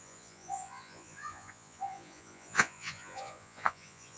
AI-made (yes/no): yes